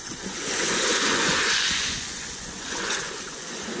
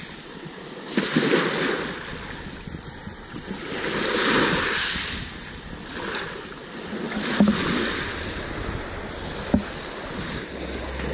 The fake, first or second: first